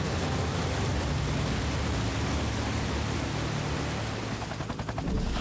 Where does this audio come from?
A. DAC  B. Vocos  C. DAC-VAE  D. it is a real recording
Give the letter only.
D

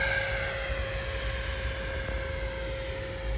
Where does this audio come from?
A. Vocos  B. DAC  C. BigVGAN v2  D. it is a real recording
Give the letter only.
D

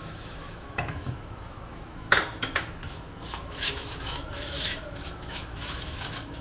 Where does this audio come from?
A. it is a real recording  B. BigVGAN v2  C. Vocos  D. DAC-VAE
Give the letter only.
D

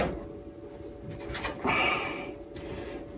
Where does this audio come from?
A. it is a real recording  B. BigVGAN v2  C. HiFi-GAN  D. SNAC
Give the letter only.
A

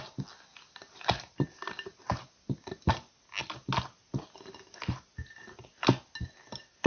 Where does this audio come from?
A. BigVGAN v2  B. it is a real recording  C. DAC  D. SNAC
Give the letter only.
B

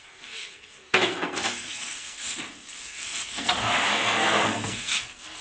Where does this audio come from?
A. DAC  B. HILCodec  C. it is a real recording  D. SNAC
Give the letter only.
D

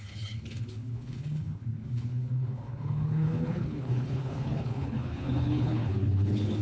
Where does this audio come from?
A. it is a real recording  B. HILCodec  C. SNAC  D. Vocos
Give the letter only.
B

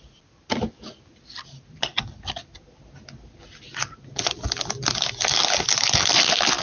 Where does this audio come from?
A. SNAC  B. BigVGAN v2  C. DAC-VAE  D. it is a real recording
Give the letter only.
D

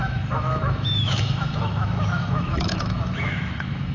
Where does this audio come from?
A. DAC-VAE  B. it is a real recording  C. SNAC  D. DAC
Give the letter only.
A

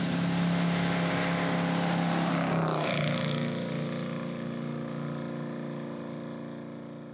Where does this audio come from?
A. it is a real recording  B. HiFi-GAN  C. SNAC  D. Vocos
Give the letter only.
A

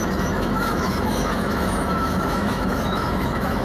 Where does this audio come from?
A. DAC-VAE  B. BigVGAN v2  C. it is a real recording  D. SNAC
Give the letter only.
A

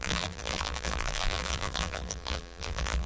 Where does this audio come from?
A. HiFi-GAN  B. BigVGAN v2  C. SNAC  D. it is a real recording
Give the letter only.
B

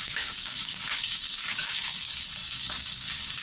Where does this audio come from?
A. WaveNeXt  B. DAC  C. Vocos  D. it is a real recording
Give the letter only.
B